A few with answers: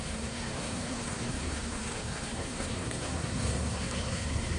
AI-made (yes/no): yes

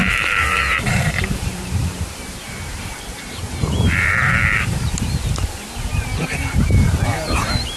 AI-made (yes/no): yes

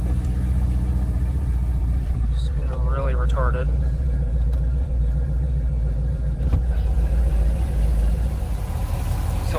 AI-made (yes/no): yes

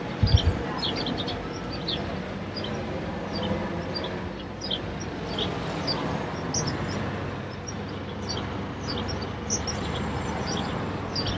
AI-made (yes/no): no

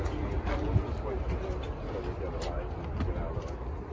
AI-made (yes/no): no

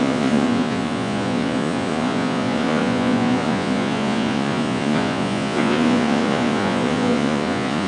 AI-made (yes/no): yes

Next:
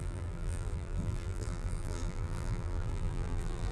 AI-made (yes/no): yes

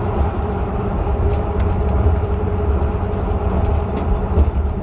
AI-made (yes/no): yes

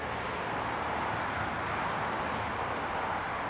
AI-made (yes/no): no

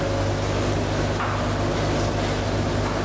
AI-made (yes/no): no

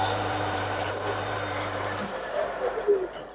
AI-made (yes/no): yes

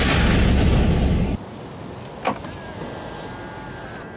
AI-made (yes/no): no